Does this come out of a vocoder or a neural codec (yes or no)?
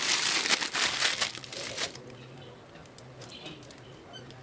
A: no